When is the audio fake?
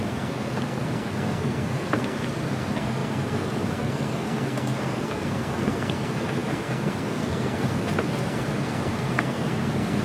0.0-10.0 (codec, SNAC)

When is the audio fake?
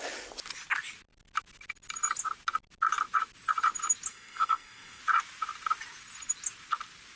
4.1-5.0 (codec, SNAC)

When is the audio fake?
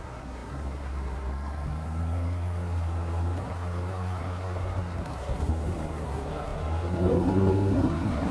0.0-8.3 (codec, SNAC)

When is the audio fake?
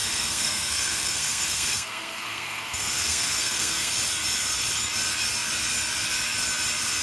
0.0-3.9 (codec, SNAC)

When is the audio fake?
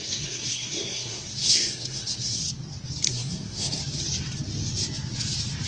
0.0-2.4 (codec, SNAC); 3.1-3.8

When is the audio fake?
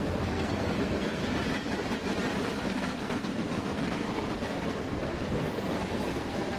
0.0-1.2 (codec, SNAC); 2.7-6.6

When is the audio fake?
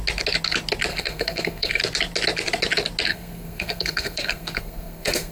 0.9-1.8 (codec, SNAC); 3.1-5.3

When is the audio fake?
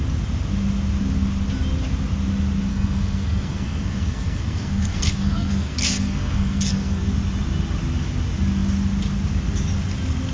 2.7-7.0 (codec, SNAC)